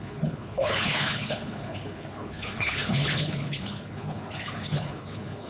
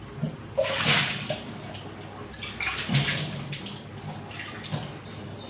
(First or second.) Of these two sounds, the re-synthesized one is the first